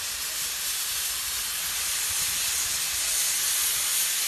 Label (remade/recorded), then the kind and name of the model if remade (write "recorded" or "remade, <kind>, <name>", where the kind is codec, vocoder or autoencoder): recorded